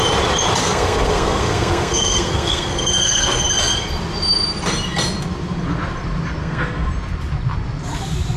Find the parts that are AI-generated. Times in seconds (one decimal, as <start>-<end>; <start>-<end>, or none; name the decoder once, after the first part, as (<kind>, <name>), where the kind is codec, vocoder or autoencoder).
0.6-3.4 (codec, SNAC); 6.4-6.9